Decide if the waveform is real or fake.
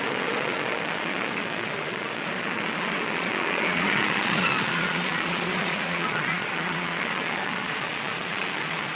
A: fake